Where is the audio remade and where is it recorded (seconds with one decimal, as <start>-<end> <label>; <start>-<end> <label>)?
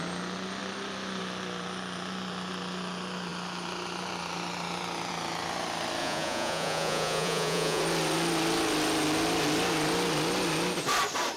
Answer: 0.0-6.0 recorded; 6.0-7.8 remade; 7.8-11.4 recorded